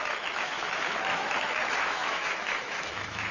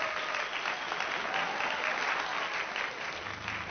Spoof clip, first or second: first